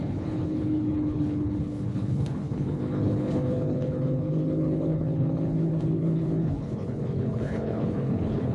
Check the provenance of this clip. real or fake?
fake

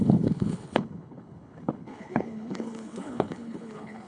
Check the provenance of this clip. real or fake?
fake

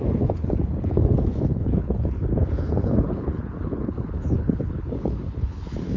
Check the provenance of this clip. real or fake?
fake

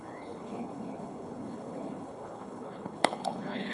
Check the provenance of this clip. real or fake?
fake